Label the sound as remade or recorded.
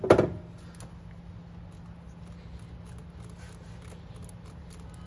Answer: recorded